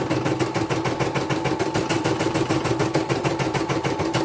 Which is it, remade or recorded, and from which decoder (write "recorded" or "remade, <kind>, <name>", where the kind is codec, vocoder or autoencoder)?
remade, vocoder, BigVGAN v2